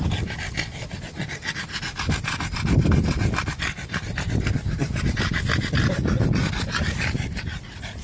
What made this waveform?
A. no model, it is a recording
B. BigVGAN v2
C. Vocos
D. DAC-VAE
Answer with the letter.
A